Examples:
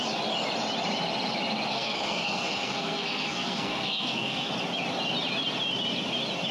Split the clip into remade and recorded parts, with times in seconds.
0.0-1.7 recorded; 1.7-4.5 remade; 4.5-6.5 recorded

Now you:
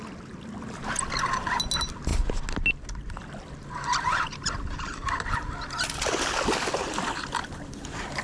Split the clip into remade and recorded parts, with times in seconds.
0.0-8.2 recorded

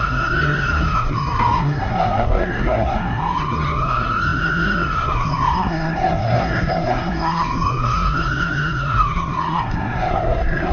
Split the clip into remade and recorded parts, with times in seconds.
0.0-10.7 remade

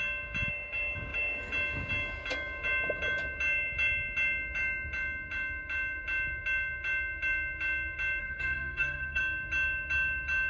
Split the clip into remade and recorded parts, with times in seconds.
0.0-8.2 recorded; 8.2-9.2 remade; 9.2-10.5 recorded